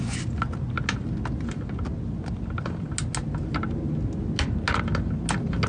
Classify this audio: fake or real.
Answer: real